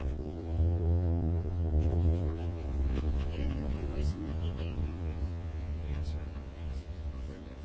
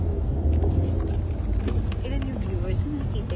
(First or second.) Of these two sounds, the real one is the second